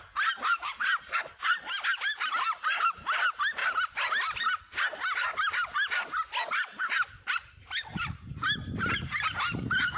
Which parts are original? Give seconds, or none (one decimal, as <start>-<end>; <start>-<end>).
0.0-10.0